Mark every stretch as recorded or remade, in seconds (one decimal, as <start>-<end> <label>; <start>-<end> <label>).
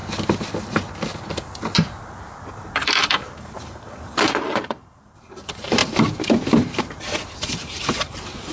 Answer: 0.0-2.5 recorded; 2.5-5.8 remade; 5.8-6.8 recorded; 6.8-8.5 remade